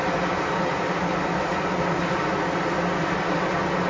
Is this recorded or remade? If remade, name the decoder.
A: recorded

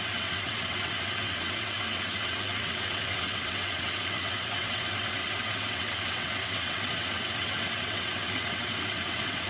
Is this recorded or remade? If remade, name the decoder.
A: remade, vocoder, WaveNeXt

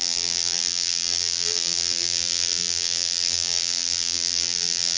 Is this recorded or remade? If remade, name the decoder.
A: remade, vocoder, BigVGAN v2